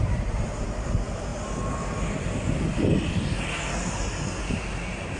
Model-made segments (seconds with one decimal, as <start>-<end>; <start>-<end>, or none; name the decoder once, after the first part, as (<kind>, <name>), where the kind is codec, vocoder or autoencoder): 0.0-1.3 (vocoder, BigVGAN v2); 4.4-5.2